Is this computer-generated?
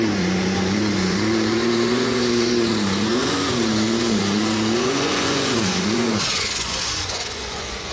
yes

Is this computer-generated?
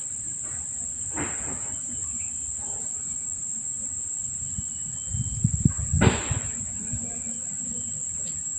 no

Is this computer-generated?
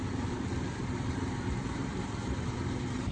yes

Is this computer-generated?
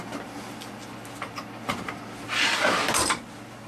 no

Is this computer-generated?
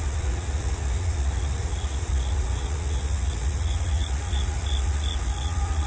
yes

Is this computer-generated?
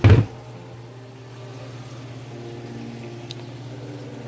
no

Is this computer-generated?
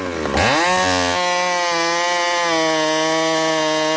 no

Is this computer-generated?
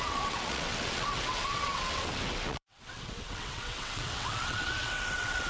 yes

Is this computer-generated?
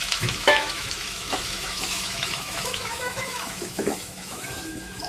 yes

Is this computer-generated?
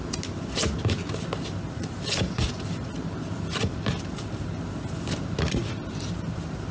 no